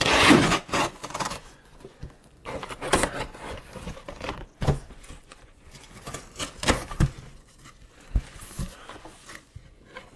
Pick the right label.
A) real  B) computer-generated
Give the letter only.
B